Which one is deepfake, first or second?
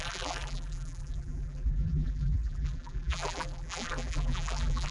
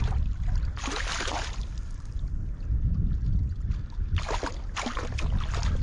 first